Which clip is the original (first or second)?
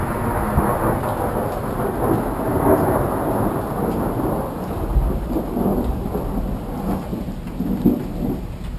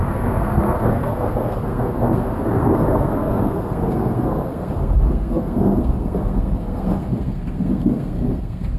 first